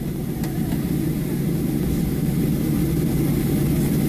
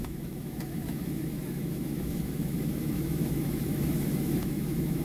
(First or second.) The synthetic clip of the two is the second